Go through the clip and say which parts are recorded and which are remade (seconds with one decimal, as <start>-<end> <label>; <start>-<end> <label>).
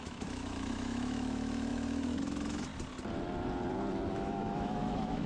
0.0-2.7 remade; 2.7-4.1 recorded; 4.1-5.3 remade